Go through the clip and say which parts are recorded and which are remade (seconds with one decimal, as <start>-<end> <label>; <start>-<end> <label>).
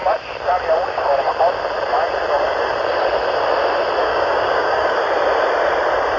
0.0-4.0 recorded; 4.0-5.0 remade; 5.0-6.2 recorded